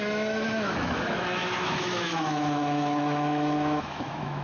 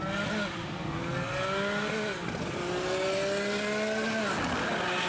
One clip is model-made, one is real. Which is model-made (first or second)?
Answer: first